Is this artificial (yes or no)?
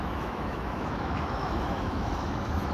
yes